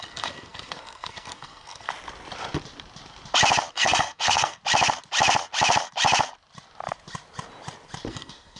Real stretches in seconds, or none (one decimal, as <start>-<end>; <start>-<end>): 1.9-3.7; 4.6-8.1